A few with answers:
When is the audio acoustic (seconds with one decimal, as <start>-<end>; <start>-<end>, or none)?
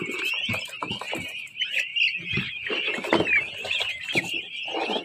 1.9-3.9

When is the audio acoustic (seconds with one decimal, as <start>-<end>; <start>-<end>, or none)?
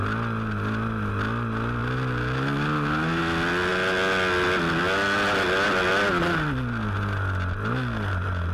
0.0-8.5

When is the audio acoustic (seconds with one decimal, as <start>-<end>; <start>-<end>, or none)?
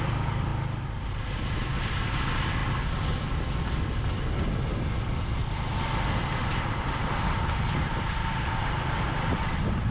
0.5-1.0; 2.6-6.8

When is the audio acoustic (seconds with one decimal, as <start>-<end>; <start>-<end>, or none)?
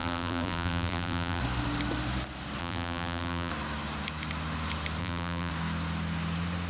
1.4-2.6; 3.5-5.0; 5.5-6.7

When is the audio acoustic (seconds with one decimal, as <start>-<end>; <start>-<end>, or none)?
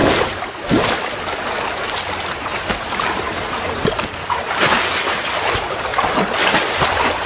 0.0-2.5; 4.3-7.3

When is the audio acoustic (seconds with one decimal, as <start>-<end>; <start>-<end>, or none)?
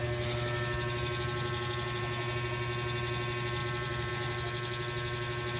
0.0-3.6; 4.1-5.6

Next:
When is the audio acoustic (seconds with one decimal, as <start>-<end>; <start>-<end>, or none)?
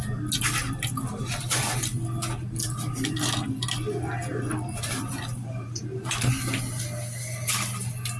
0.0-4.3; 5.8-8.2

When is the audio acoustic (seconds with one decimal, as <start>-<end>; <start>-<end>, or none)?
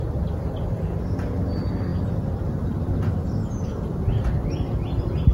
0.0-5.3